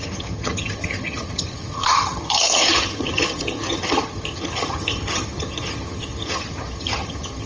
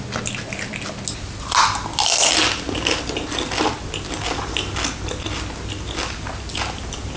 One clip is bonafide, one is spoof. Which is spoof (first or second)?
first